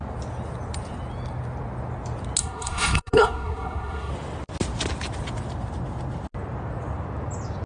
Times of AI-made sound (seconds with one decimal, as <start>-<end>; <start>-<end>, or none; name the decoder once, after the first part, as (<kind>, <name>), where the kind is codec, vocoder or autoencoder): 2.4-4.1 (codec, SNAC)